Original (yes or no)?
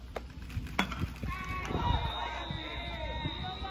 yes